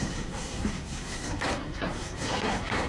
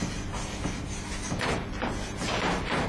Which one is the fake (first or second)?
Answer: first